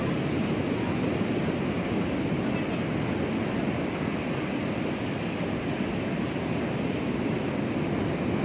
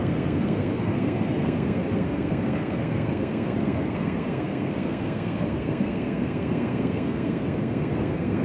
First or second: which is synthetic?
second